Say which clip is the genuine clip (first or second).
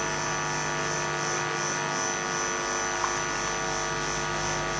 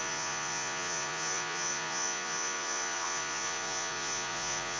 first